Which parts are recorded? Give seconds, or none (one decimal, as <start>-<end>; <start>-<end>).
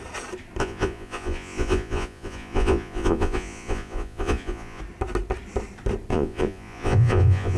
0.0-0.6; 4.8-6.1